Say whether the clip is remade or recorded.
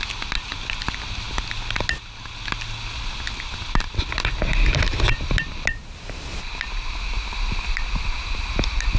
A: recorded